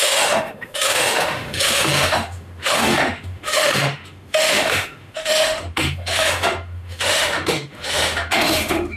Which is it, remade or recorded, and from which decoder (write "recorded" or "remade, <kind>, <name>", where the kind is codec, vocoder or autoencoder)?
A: remade, autoencoder, DAC-VAE